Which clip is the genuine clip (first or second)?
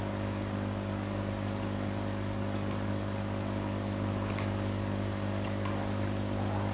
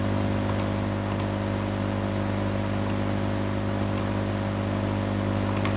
second